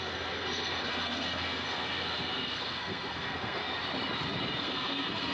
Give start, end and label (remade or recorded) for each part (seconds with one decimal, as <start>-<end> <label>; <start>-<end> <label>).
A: 0.0-3.6 remade; 3.6-4.6 recorded; 4.6-5.3 remade